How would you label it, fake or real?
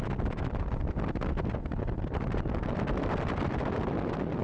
real